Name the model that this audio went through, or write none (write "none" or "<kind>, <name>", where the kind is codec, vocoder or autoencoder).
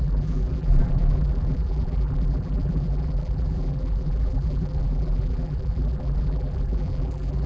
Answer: vocoder, BigVGAN v2